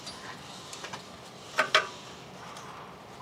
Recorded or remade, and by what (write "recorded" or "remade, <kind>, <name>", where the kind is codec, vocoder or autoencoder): recorded